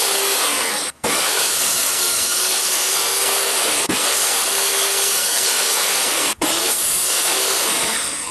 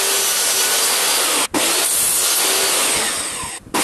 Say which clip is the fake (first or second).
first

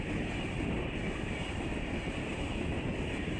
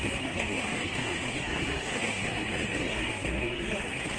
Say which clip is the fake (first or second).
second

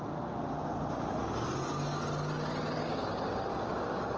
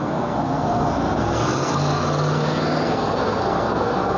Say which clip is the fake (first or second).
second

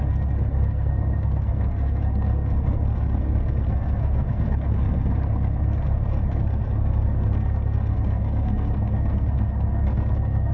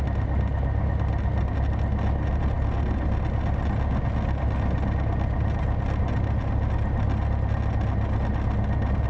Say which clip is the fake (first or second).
first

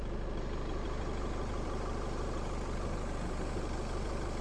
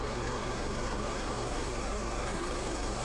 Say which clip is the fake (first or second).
second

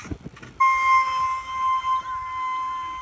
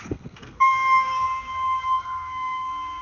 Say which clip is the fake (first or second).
second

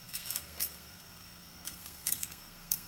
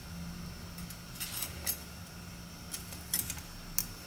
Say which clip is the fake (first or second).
first